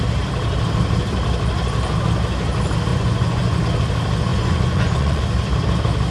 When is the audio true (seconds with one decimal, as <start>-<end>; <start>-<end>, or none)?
0.0-2.9; 3.6-4.3; 5.2-6.1

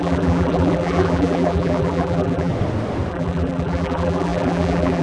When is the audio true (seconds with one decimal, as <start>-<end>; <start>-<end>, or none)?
2.5-3.1

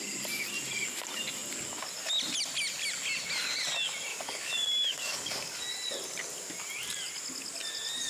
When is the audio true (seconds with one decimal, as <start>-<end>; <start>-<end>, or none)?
0.0-4.1; 5.6-8.1

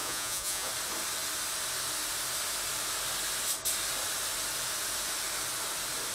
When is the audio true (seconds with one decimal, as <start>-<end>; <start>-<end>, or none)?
0.7-6.1